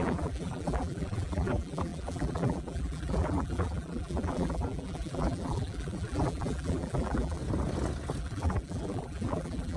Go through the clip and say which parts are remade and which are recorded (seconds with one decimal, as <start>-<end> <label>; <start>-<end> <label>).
0.0-7.4 remade; 7.4-8.2 recorded; 8.2-9.8 remade